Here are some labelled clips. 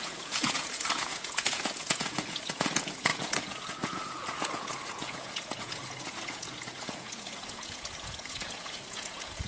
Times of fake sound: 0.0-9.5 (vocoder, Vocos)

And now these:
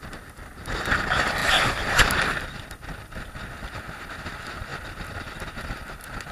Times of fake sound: 4.7-5.4 (vocoder, BigVGAN v2)

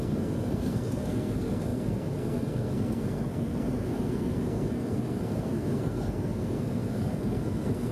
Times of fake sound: 0.0-7.9 (codec, SNAC)

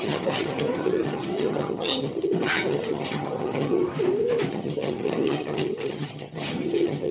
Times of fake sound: 0.0-3.8 (vocoder, HiFi-GAN); 4.5-7.1

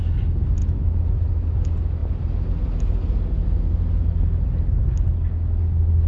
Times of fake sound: none

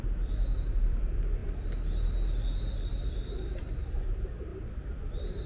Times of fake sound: 0.0-1.4 (vocoder, BigVGAN v2); 2.8-5.5

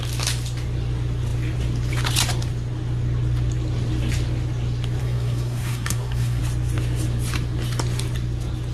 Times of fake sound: 5.0-6.4 (codec, SNAC)

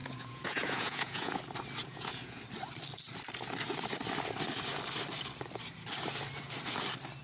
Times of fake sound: 0.0-1.4 (vocoder, Vocos); 1.8-2.4